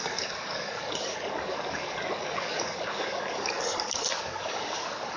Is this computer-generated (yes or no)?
yes